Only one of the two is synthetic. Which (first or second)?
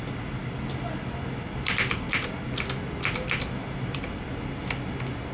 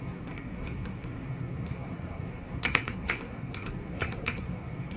second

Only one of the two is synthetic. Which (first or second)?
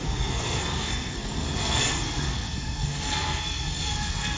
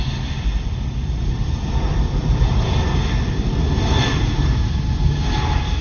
first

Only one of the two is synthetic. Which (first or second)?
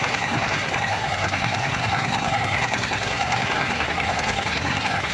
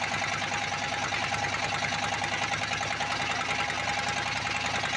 first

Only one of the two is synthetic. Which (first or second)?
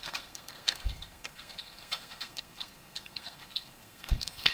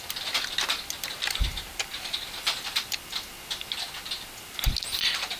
first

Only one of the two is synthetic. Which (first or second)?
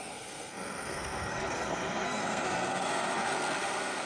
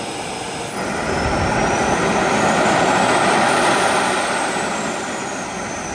first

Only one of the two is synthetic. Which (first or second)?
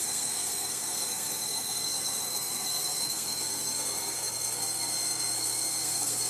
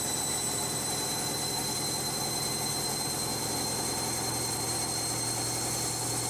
first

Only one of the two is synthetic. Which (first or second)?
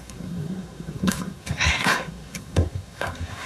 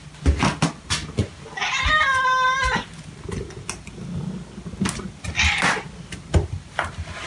first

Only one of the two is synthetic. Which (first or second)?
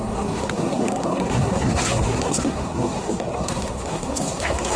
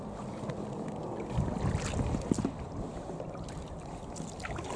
first